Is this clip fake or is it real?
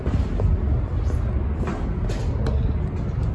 real